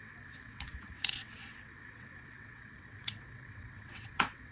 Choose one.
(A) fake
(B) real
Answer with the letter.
A